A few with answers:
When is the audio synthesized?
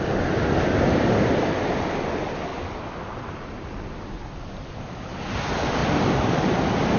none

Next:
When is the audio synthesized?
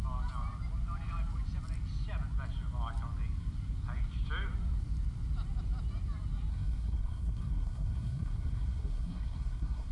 6.5-9.9 (codec, SNAC)